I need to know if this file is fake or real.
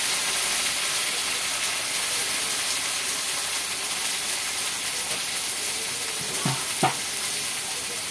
real